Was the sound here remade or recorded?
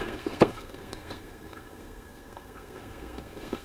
remade